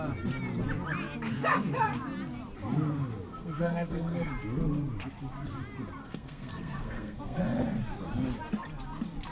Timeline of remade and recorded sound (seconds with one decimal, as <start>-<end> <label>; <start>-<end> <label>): 0.0-3.3 recorded; 3.3-4.3 remade; 4.3-6.0 recorded; 6.0-7.4 remade; 7.4-9.3 recorded